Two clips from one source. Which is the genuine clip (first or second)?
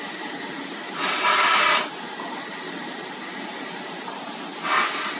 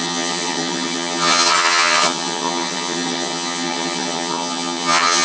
first